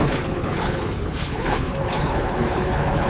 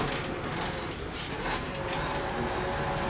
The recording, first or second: second